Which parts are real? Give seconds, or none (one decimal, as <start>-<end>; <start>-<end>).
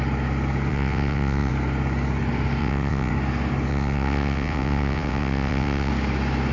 0.0-0.7; 1.5-2.6; 3.1-3.7; 5.9-6.5